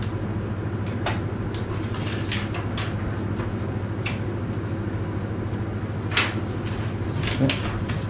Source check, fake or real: real